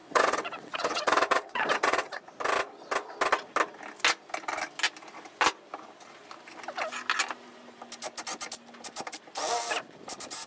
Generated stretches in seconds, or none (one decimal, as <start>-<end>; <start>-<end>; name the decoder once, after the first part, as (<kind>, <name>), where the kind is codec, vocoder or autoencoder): 0.0-2.2 (vocoder, WaveNeXt)